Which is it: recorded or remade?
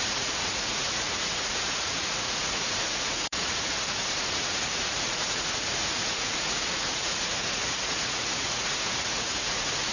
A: remade